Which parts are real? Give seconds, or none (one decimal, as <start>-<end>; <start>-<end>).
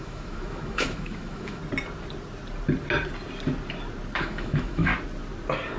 1.6-4.2; 4.9-5.8